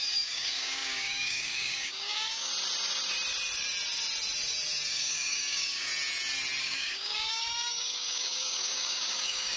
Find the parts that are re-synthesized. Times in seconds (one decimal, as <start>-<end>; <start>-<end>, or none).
0.0-2.5; 4.9-5.9; 6.6-9.6